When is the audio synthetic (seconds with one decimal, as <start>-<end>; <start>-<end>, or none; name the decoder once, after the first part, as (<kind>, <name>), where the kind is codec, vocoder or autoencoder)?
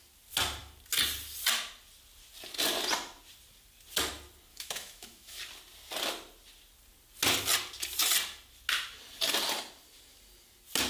4.5-5.4 (autoencoder, DAC-VAE)